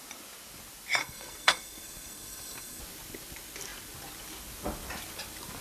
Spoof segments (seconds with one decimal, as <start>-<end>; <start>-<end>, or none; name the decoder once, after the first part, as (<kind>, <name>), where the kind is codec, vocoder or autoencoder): 1.0-2.8 (codec, SNAC)